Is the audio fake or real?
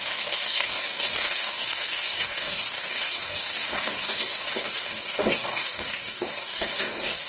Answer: fake